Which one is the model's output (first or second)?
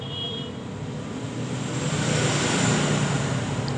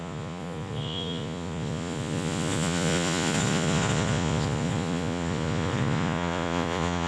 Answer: second